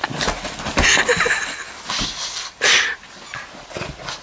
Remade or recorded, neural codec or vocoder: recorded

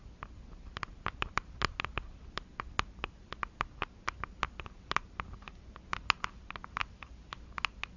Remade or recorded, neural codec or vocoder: recorded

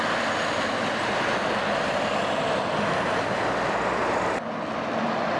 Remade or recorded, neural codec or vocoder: recorded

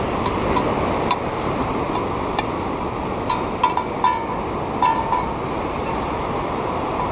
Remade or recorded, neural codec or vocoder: recorded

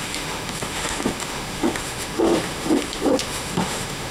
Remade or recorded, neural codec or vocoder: remade, autoencoder, DAC-VAE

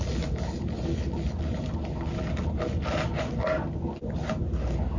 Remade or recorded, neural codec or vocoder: recorded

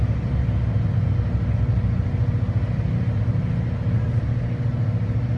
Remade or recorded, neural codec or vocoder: recorded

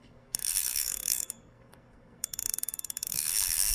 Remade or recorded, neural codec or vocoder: remade, codec, SNAC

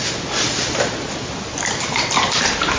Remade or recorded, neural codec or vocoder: recorded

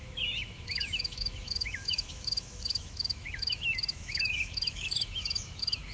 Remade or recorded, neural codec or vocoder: remade, autoencoder, DAC-VAE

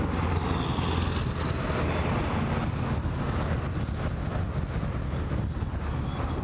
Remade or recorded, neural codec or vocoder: recorded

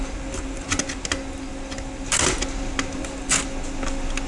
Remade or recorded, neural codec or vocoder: recorded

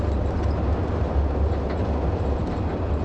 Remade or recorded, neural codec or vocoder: recorded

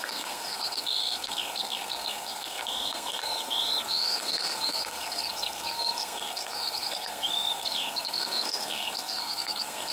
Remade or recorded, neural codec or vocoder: remade, codec, SNAC